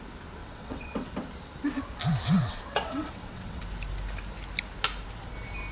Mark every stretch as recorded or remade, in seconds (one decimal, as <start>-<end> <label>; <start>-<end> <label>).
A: 0.0-0.4 recorded; 0.4-1.1 remade; 1.1-2.3 recorded; 2.3-3.6 remade; 3.6-5.7 recorded